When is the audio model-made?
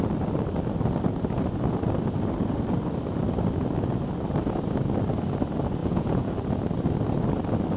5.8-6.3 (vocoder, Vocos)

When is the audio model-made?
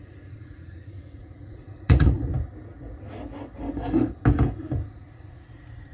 0.0-2.3 (vocoder, Vocos); 4.9-5.9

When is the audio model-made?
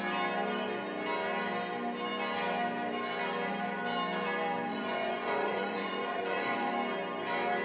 4.7-6.7 (vocoder, Vocos)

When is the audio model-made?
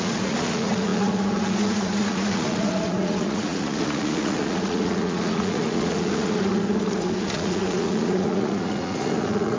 0.0-9.6 (vocoder, Vocos)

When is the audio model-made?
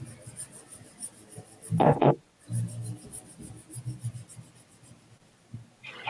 1.8-2.4 (vocoder, Vocos)